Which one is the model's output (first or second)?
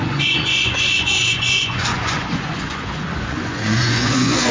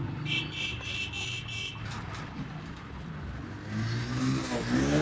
first